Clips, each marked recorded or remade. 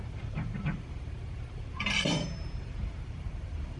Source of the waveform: remade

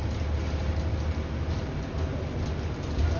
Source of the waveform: recorded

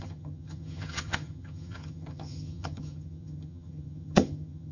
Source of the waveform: remade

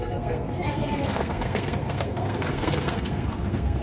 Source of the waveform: remade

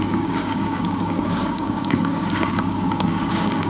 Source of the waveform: remade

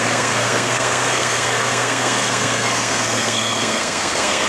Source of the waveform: remade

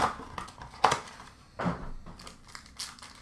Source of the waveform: recorded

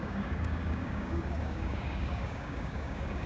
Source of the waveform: remade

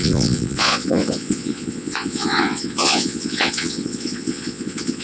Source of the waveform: remade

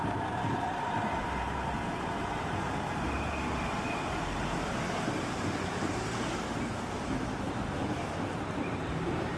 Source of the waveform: remade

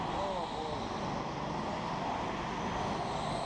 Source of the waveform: recorded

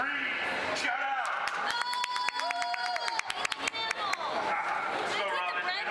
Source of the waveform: recorded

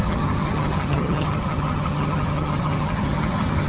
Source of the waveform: remade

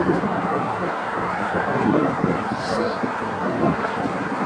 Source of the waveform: remade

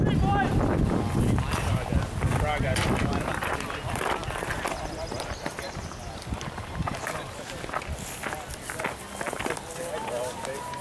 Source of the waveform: recorded